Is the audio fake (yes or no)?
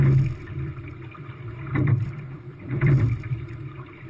yes